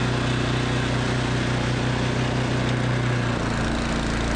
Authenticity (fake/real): real